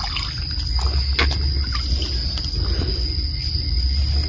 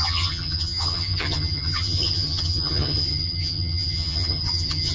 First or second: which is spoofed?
second